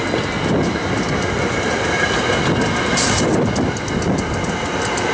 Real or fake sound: real